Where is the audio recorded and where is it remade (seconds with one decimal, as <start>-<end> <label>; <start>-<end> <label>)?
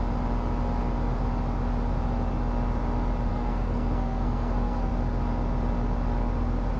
0.0-3.3 recorded; 3.3-4.9 remade; 4.9-6.8 recorded